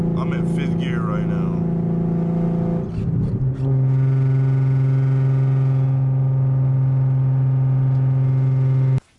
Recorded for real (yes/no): yes